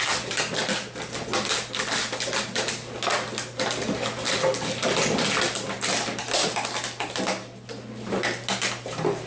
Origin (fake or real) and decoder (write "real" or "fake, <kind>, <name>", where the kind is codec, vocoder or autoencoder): real